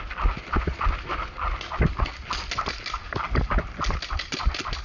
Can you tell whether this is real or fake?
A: real